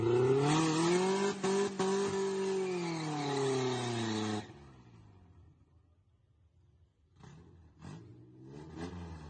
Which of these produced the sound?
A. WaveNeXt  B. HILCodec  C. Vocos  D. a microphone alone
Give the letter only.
D